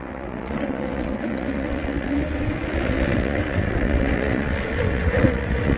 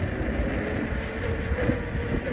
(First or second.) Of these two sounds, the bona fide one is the second